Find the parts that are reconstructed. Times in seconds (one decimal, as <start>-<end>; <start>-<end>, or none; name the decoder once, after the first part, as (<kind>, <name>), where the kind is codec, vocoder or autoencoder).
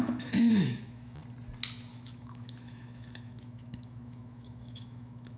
0.0-1.2 (autoencoder, DAC-VAE); 1.9-5.4